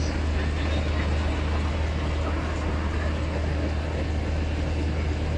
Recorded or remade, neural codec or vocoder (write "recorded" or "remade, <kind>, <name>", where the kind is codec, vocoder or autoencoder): recorded